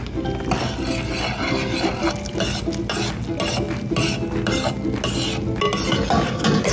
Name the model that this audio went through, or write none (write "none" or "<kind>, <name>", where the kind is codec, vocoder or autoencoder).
none